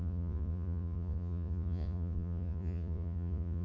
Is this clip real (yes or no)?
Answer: no